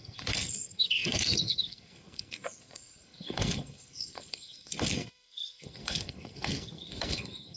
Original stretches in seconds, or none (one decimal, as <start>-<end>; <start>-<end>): none